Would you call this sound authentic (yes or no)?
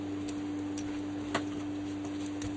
yes